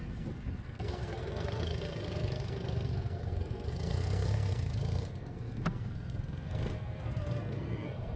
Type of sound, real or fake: fake